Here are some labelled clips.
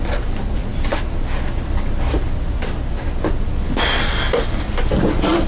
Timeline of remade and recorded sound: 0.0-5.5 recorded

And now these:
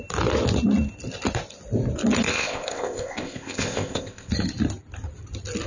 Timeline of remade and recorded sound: 0.0-2.3 recorded; 2.3-4.3 remade; 4.3-5.7 recorded

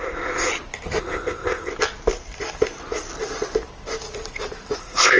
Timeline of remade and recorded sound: 0.0-0.5 remade; 0.5-1.0 recorded; 1.0-1.7 remade; 1.7-4.8 recorded; 4.8-5.2 remade

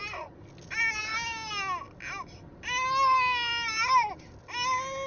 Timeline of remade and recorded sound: 0.0-5.1 recorded

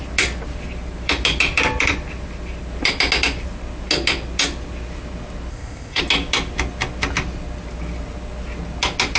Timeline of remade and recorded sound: 0.0-5.5 recorded; 5.5-6.0 remade; 6.0-9.2 recorded